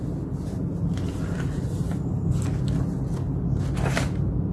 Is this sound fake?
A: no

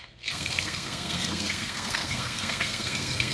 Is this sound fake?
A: yes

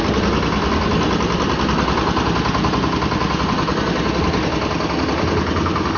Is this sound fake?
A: no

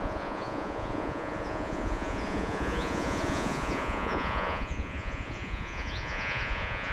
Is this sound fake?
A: yes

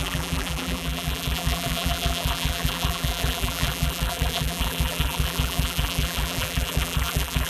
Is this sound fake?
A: yes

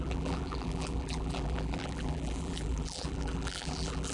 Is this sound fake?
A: yes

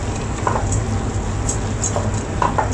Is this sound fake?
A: no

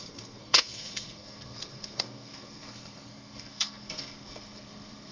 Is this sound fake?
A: yes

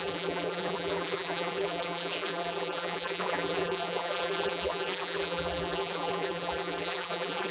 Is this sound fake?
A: yes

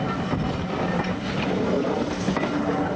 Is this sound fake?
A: no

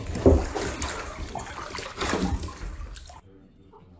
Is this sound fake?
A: no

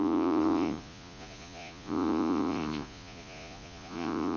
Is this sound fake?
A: yes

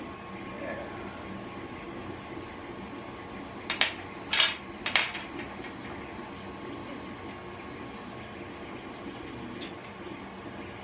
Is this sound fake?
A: no